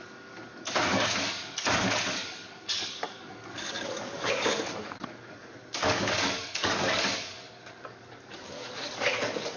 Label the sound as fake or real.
fake